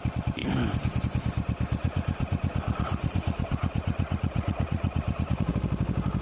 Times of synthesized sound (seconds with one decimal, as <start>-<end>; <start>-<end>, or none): 1.8-5.5